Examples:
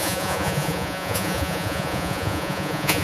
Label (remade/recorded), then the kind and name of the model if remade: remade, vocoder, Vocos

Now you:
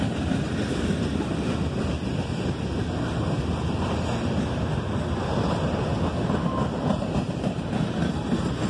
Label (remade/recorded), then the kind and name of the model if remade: recorded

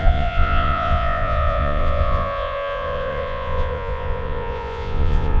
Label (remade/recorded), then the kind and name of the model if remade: remade, vocoder, Vocos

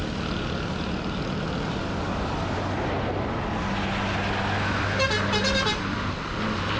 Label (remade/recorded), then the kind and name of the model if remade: recorded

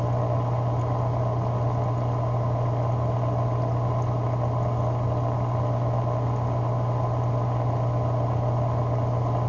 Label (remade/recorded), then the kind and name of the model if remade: recorded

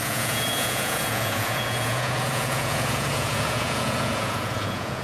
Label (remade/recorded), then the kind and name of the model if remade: remade, vocoder, Vocos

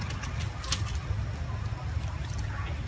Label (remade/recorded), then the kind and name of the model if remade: recorded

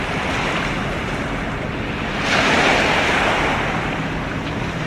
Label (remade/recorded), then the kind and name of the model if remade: recorded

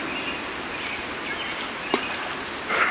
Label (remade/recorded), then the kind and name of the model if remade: recorded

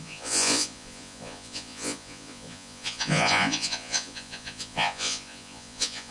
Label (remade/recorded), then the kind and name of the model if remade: remade, vocoder, Vocos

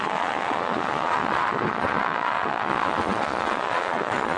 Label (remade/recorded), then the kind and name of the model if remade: remade, vocoder, Vocos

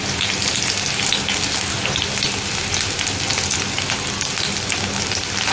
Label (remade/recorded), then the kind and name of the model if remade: recorded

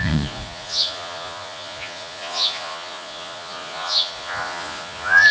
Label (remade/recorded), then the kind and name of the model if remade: remade, vocoder, Vocos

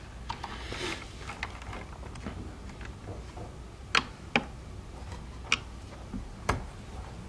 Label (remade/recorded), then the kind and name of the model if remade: recorded